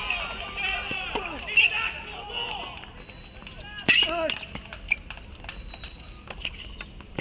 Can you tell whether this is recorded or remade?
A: recorded